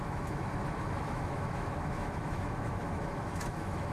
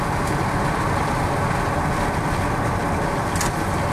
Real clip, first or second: second